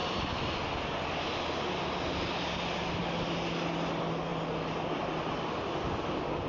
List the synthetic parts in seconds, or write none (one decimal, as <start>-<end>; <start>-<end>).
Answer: none